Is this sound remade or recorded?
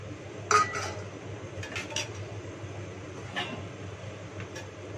recorded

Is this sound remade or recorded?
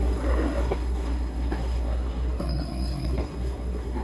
remade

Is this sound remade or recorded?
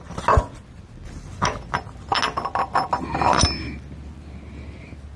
recorded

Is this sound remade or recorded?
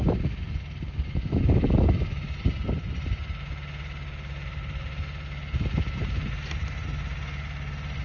recorded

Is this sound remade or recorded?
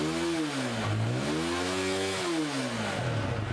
recorded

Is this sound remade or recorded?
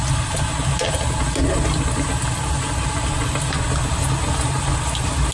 recorded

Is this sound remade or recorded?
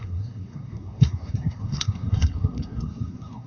remade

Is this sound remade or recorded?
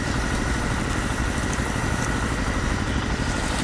recorded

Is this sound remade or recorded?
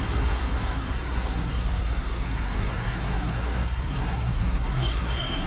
remade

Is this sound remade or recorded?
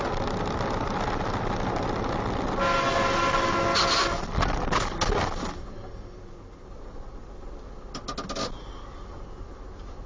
recorded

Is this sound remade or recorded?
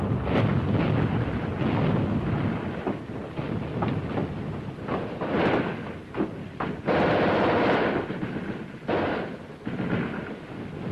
recorded